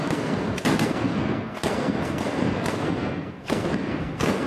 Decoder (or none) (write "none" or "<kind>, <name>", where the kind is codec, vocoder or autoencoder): codec, SNAC